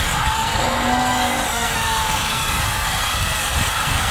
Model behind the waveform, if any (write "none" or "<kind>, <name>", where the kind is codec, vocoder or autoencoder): codec, SNAC